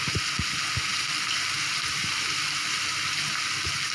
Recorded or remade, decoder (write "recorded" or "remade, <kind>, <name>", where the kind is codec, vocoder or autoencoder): recorded